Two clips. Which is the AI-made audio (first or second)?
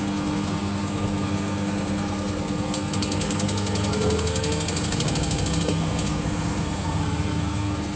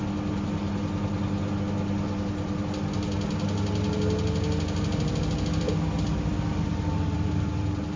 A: first